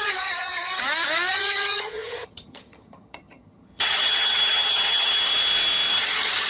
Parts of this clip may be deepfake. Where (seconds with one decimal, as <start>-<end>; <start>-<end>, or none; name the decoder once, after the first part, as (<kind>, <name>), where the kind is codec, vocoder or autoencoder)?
0.0-0.7 (vocoder, HiFi-GAN); 1.3-5.3; 5.9-6.5